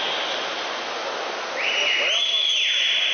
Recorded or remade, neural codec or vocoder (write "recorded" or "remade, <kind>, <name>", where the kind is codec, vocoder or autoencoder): recorded